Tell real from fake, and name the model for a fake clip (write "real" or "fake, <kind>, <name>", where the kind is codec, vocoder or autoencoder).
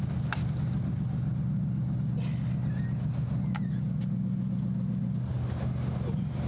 real